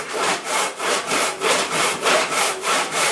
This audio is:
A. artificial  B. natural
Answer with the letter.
A